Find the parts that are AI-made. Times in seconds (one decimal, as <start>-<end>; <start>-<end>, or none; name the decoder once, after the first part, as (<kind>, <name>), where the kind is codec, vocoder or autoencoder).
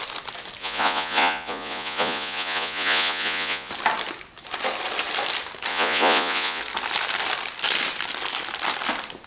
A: 0.6-3.7 (vocoder, Vocos); 5.7-6.6